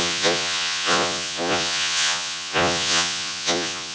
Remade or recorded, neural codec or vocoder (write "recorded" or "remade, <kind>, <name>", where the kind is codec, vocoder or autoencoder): remade, vocoder, Vocos